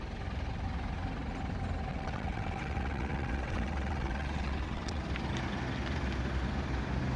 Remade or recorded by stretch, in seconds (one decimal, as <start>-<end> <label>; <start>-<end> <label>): 0.0-1.9 recorded; 1.9-5.0 remade; 5.0-7.2 recorded